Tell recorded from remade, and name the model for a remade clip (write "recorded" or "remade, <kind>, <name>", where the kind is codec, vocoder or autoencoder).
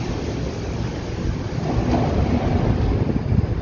recorded